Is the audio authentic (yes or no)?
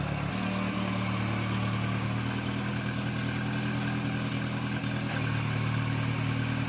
yes